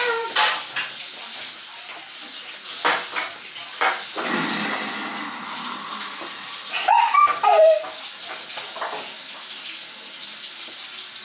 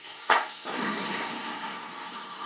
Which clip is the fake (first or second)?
second